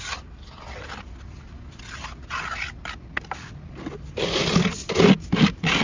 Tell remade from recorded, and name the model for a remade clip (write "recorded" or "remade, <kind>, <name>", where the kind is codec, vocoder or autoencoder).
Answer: recorded